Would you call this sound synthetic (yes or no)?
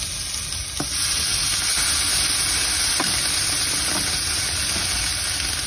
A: no